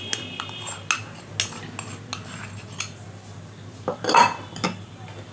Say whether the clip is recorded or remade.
recorded